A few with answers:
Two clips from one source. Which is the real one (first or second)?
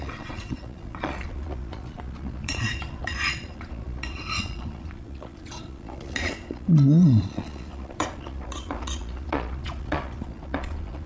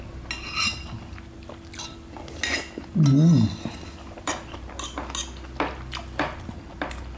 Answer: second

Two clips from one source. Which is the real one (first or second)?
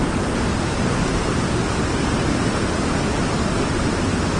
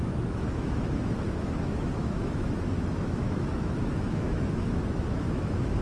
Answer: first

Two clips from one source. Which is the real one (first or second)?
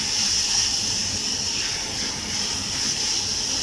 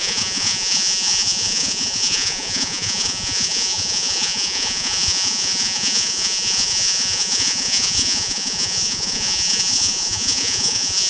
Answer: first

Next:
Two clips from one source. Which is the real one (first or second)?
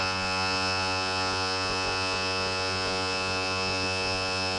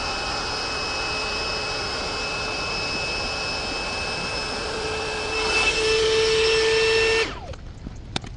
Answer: second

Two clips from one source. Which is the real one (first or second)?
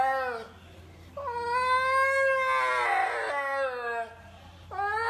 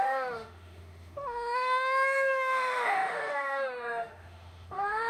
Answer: first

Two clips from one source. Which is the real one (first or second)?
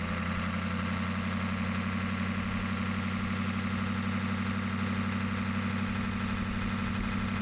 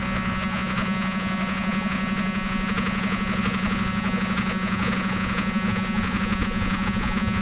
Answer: first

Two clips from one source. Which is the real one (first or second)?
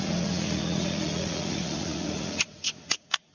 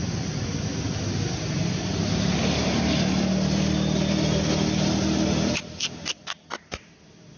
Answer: second